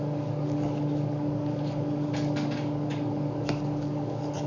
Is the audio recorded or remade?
remade